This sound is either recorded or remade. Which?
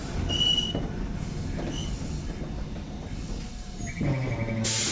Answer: recorded